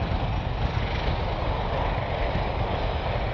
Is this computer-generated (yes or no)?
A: no